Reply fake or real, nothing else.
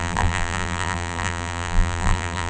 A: fake